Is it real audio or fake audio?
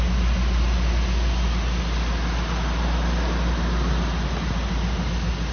real